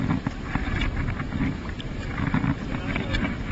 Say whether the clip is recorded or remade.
recorded